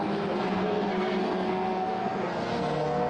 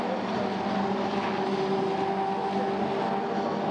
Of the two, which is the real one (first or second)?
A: second